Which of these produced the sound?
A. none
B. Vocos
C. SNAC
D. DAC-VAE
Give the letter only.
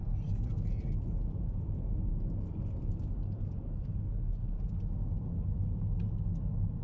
A